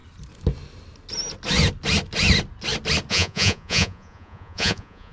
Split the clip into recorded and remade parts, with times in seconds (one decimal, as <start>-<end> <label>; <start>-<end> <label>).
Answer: 0.0-3.1 recorded; 3.1-5.1 remade